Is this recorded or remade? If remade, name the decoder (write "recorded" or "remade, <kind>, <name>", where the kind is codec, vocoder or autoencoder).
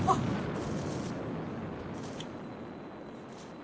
recorded